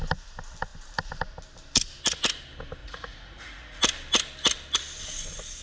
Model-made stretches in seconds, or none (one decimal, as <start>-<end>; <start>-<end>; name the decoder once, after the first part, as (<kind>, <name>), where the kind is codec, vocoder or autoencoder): 2.8-3.8 (vocoder, Vocos)